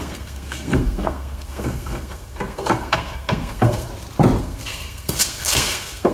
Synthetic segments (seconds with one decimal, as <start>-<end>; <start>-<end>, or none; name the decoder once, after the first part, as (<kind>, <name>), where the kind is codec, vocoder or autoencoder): 0.0-3.9 (codec, SNAC); 4.4-6.1